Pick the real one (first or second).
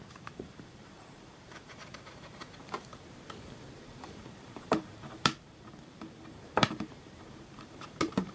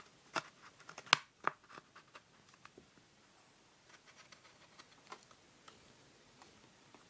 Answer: second